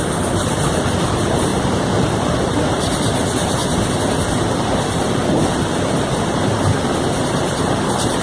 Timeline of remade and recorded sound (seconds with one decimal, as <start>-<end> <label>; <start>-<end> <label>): 0.0-1.5 remade; 1.5-2.8 recorded; 2.8-3.6 remade; 3.6-5.9 recorded; 5.9-8.2 remade